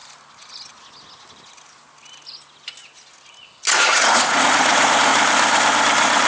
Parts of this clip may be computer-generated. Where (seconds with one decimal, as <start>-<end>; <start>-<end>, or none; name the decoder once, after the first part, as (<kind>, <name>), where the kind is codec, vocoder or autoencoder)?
3.7-5.1 (vocoder, Vocos)